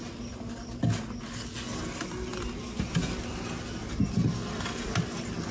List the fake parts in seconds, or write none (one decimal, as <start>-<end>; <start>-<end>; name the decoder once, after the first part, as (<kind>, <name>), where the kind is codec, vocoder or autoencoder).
none